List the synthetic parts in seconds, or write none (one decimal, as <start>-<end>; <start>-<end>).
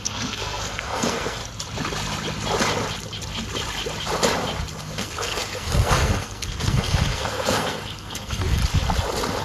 0.0-1.4; 4.8-8.6